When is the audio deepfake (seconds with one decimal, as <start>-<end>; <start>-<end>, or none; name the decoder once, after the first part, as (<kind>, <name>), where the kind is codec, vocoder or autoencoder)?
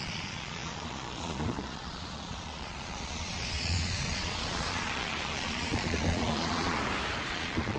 0.0-6.8 (vocoder, Vocos); 7.3-7.8